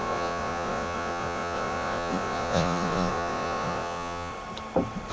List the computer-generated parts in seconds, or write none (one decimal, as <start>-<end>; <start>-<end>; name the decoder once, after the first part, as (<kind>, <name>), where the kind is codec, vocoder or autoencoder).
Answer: 0.0-4.3 (vocoder, Vocos)